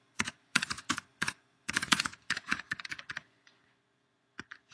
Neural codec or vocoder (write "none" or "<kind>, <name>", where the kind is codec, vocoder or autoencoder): vocoder, Vocos